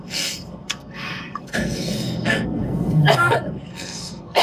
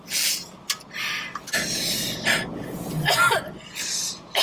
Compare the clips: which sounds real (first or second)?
second